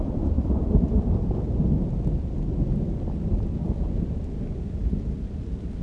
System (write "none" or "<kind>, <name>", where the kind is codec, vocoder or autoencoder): none